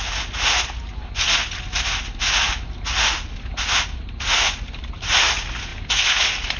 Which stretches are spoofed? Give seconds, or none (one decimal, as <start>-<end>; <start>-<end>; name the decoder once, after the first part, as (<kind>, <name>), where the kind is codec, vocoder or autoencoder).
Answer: none